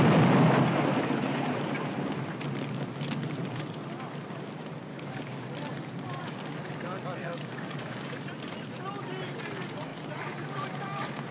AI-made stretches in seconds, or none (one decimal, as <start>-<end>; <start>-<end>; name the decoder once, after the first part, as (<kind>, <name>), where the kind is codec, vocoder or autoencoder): 4.9-5.4 (codec, DAC); 7.2-8.2